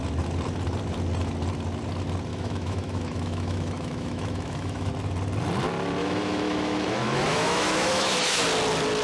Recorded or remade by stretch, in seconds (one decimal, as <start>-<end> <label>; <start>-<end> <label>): 0.0-2.3 recorded; 2.3-4.9 remade; 4.9-6.0 recorded; 6.0-8.4 remade; 8.4-9.0 recorded